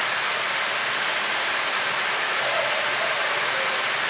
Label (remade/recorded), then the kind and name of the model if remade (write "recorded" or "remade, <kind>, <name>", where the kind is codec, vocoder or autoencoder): recorded